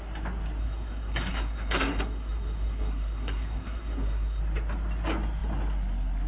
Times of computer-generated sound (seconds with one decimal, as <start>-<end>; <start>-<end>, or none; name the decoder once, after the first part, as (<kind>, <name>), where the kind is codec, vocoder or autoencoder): 0.6-4.4 (codec, SNAC)